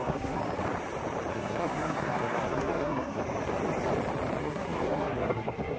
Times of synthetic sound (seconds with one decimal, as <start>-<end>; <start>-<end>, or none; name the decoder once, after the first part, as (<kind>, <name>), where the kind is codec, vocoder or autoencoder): 0.0-0.4 (codec, SNAC); 1.3-3.2; 4.4-5.8